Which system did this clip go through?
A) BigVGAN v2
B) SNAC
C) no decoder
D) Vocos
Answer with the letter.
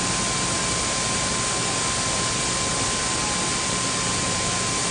C